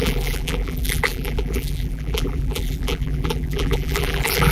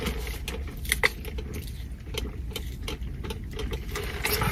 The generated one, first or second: first